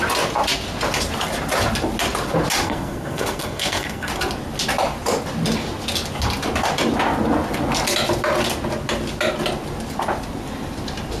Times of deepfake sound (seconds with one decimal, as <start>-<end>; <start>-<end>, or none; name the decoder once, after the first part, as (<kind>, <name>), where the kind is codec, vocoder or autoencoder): 2.6-4.1 (codec, SNAC)